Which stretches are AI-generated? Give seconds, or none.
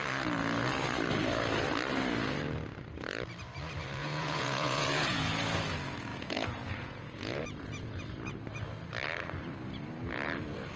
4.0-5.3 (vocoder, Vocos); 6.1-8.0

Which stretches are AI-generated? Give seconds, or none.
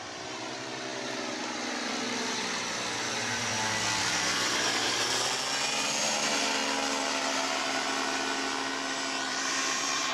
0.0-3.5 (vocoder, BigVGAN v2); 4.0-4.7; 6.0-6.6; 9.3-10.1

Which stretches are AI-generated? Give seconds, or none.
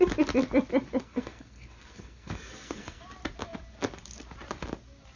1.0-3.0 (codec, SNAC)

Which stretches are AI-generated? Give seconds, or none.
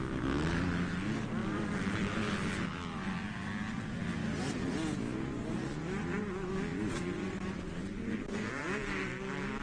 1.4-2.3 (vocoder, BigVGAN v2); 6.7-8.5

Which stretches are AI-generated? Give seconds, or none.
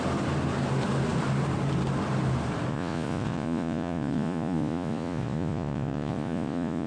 2.7-6.9 (vocoder, Vocos)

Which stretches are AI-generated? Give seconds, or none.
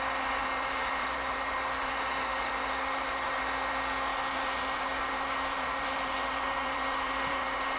0.4-3.4 (vocoder, BigVGAN v2); 4.1-7.8